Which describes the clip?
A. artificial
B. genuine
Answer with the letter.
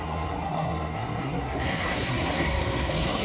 A